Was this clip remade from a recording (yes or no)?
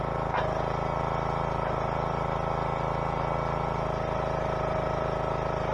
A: no